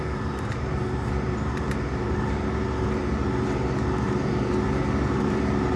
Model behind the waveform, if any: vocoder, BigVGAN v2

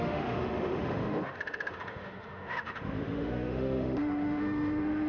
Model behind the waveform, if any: autoencoder, DAC-VAE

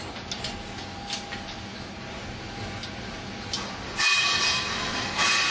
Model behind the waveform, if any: none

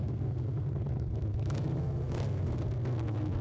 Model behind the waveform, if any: codec, SNAC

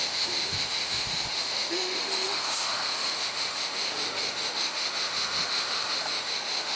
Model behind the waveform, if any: autoencoder, DAC-VAE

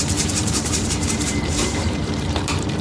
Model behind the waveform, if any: vocoder, BigVGAN v2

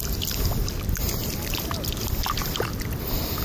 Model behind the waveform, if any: none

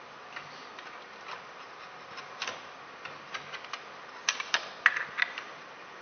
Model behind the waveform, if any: none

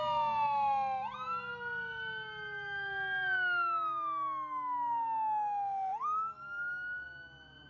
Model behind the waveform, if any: none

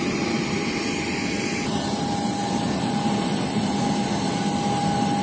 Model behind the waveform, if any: none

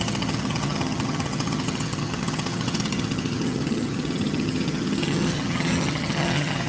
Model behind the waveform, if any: vocoder, HiFi-GAN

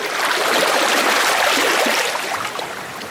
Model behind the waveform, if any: vocoder, BigVGAN v2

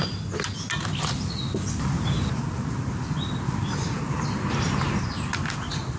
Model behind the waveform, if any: none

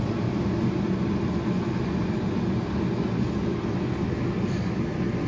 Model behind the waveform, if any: none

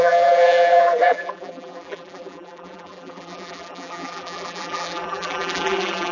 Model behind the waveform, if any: vocoder, BigVGAN v2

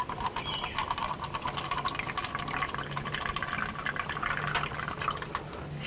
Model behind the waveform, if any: none